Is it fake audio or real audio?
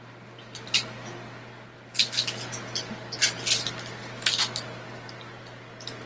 real